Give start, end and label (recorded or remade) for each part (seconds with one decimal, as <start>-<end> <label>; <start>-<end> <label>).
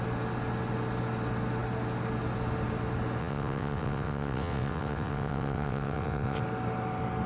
0.0-3.2 recorded; 3.2-6.4 remade; 6.4-7.3 recorded